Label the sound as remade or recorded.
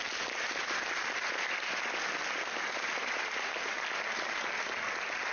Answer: recorded